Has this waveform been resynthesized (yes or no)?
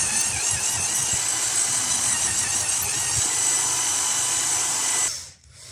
no